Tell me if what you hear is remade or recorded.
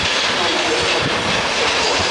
recorded